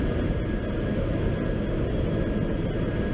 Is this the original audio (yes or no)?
yes